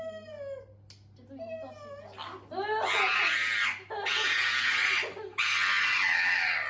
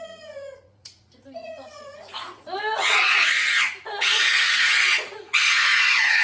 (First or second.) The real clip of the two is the first